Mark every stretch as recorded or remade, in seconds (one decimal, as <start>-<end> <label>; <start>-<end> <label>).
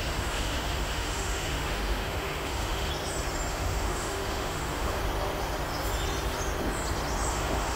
0.0-2.9 remade; 2.9-3.5 recorded; 3.5-5.0 remade; 5.0-7.3 recorded; 7.3-7.8 remade